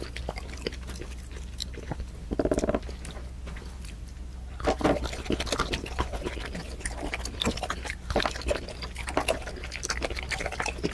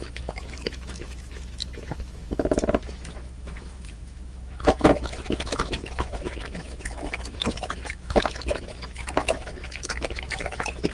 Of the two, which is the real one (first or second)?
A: first